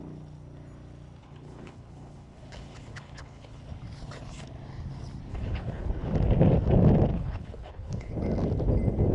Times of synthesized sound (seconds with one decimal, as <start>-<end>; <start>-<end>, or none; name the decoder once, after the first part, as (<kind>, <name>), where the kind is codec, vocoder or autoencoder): 1.2-3.6 (codec, HILCodec); 5.3-5.9; 7.1-8.1